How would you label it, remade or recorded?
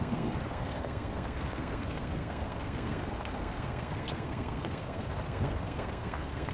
remade